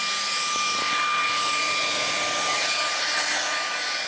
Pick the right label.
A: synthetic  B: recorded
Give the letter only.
B